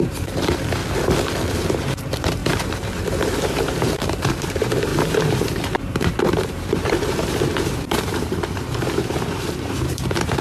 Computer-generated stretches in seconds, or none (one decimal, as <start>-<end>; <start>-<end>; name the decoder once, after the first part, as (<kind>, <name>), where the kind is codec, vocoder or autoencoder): 0.0-0.8 (vocoder, BigVGAN v2); 1.5-10.4